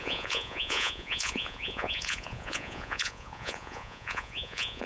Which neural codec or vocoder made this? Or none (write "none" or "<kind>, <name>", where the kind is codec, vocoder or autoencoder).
vocoder, Vocos